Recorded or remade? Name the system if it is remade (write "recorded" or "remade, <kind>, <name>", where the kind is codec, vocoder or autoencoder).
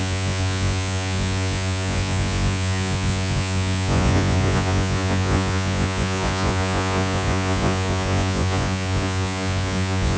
remade, vocoder, Vocos